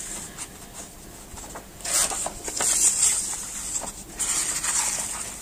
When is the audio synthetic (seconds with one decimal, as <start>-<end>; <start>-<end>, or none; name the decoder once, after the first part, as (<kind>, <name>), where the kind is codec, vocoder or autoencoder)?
none